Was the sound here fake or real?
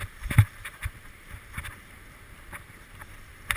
fake